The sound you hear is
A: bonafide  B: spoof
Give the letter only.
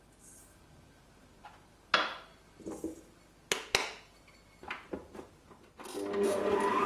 A